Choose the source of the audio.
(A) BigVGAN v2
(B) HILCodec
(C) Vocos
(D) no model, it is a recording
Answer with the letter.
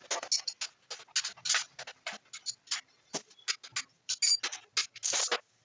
D